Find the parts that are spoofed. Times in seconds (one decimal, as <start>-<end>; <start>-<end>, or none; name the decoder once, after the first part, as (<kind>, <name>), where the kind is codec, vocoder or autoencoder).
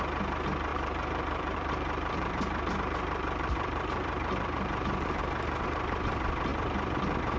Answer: 0.7-5.1 (vocoder, BigVGAN v2)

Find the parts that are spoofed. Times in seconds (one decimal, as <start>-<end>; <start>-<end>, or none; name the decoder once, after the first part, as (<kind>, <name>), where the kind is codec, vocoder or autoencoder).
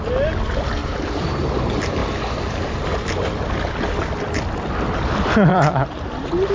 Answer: 0.8-1.5 (vocoder, BigVGAN v2); 2.0-2.7; 5.5-6.5